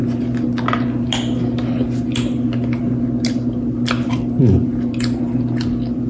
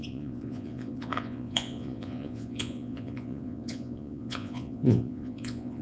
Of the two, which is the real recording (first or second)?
first